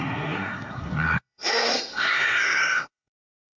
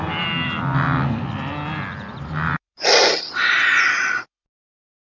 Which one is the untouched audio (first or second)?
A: second